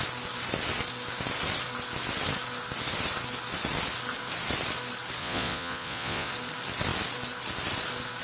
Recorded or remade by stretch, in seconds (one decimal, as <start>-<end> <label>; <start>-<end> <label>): 0.0-5.2 recorded; 5.2-6.3 remade; 6.3-8.2 recorded